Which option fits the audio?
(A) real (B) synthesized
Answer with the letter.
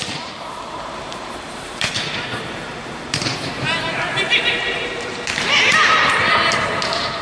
B